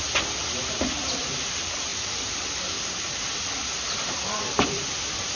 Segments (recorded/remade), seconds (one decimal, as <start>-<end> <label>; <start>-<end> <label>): 0.0-5.4 recorded